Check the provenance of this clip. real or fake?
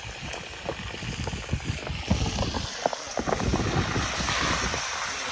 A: real